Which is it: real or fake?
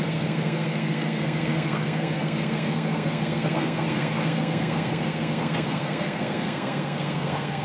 fake